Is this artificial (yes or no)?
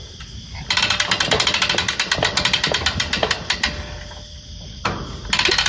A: no